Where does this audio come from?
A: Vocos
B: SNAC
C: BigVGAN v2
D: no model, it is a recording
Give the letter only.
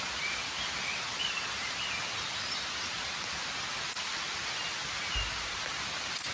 D